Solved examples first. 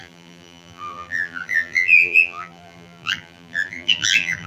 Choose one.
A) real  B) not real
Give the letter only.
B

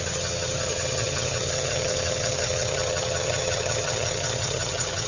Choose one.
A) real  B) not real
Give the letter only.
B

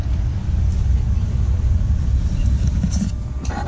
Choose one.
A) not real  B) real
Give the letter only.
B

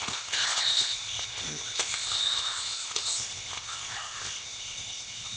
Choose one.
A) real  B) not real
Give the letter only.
B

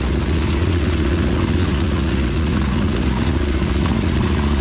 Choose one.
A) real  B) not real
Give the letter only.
B